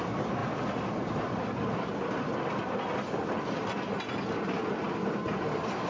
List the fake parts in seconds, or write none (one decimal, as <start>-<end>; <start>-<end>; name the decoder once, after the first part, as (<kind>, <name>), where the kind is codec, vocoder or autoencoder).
none